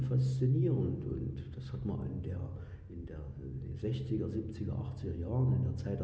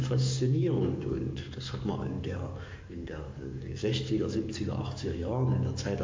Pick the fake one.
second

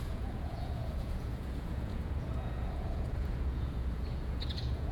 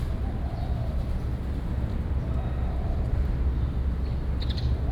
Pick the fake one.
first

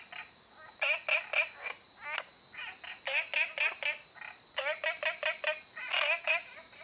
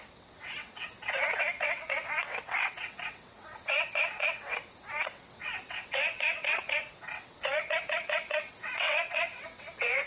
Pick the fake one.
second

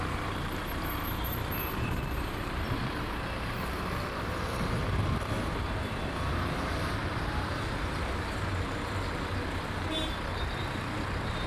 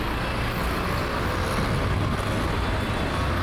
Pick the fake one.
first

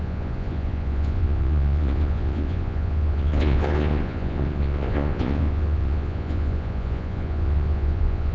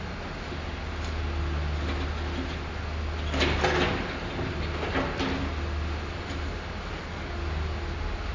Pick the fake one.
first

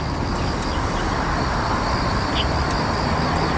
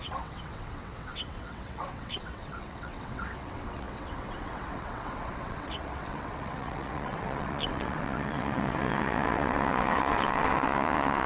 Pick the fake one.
second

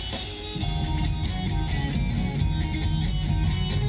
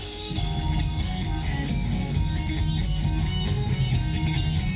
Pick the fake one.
second